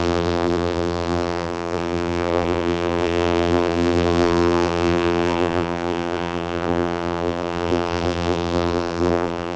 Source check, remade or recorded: remade